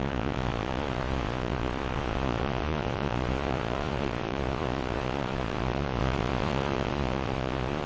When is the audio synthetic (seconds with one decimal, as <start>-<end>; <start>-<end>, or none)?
0.0-7.9